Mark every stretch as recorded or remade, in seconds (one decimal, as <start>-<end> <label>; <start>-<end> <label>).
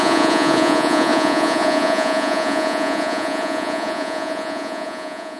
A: 0.0-5.4 remade